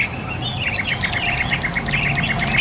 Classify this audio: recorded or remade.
recorded